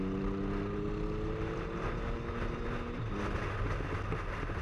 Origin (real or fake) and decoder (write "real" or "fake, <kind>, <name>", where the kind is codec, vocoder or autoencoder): real